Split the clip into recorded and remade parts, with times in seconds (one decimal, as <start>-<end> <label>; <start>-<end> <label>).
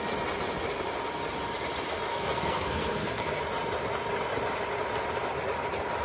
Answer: 0.0-2.1 recorded; 2.1-3.4 remade; 3.4-6.0 recorded